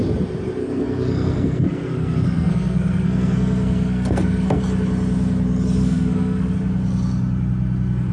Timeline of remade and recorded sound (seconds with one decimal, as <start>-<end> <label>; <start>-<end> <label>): 0.0-0.6 recorded; 0.6-4.6 remade; 4.6-5.8 recorded; 5.8-6.5 remade; 6.5-8.1 recorded